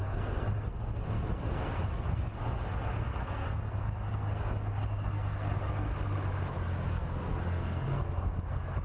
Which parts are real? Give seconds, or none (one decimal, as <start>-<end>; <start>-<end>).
5.9-6.9